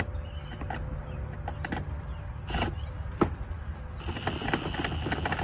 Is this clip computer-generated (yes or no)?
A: no